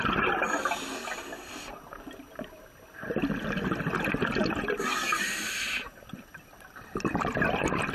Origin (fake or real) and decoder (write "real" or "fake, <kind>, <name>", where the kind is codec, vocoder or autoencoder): real